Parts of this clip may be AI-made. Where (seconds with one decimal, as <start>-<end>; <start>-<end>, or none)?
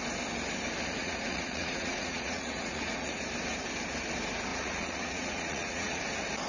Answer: 1.0-3.2; 4.5-6.0